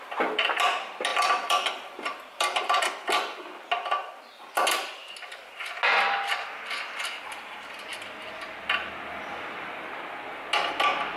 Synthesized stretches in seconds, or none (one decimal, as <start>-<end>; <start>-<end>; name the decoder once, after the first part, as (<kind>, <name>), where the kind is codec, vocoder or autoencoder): 1.1-2.8 (vocoder, BigVGAN v2)